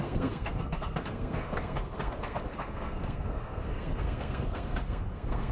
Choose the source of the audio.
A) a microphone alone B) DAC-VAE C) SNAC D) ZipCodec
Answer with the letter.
C